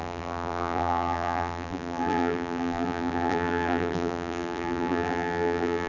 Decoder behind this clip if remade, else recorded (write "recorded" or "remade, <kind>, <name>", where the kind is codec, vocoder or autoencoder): remade, vocoder, BigVGAN v2